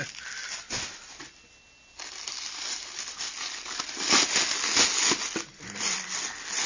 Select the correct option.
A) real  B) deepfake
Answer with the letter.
A